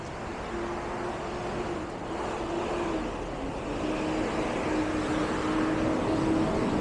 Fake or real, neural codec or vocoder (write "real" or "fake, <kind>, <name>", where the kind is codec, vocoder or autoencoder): real